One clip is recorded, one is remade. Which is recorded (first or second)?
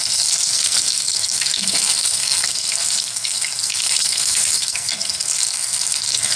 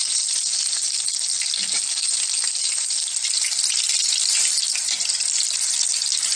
second